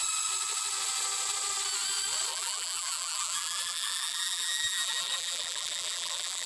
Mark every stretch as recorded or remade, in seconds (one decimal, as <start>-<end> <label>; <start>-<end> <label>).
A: 0.0-2.3 recorded; 2.3-6.5 remade